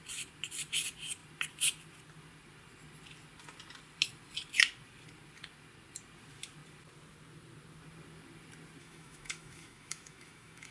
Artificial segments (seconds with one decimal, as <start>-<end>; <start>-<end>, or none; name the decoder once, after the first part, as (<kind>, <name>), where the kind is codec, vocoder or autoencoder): 8.8-10.7 (autoencoder, DAC-VAE)